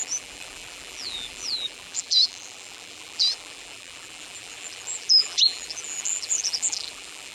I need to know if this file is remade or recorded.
remade